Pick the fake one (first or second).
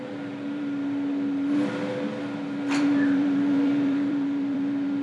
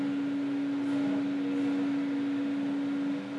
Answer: first